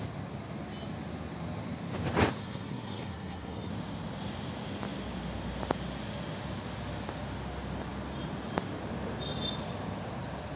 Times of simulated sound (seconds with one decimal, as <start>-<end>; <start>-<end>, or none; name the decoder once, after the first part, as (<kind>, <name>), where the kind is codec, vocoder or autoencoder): 2.4-3.7 (codec, SNAC)